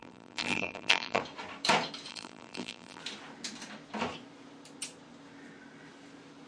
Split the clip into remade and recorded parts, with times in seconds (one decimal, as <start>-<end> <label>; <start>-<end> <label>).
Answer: 0.0-1.2 remade; 1.2-2.1 recorded; 2.1-3.0 remade; 3.0-6.5 recorded